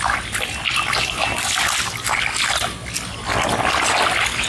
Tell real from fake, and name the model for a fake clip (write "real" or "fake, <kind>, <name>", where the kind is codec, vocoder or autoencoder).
real